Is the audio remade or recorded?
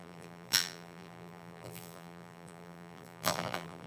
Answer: remade